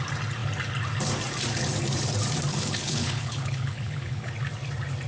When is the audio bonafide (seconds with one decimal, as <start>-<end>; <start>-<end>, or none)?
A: 0.0-2.5; 4.3-5.1